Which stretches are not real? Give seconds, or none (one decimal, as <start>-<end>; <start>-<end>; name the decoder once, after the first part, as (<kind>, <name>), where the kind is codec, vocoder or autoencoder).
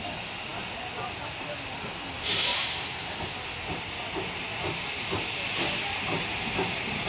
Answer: none